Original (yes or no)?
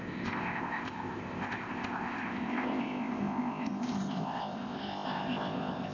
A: no